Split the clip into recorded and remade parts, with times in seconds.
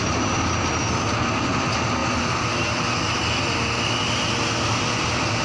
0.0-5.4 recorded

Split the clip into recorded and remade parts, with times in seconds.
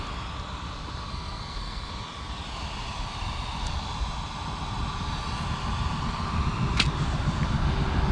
0.0-1.1 recorded; 1.1-1.9 remade; 1.9-8.1 recorded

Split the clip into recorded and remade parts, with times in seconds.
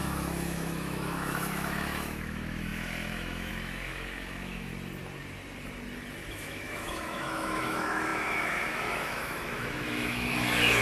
0.0-4.7 remade; 4.7-6.3 recorded; 6.3-10.8 remade